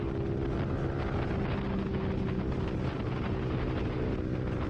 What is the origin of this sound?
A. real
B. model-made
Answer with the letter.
A